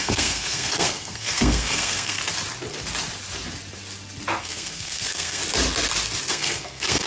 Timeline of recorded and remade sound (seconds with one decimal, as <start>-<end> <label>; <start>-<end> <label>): 0.0-2.2 remade; 2.2-4.4 recorded; 4.4-5.4 remade; 5.4-6.3 recorded; 6.3-7.1 remade